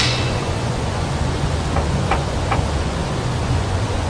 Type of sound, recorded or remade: remade